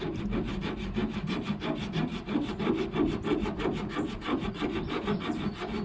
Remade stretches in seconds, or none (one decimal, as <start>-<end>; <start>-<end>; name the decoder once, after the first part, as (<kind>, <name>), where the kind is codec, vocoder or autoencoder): none